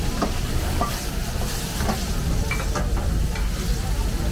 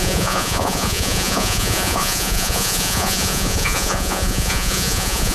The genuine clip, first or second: first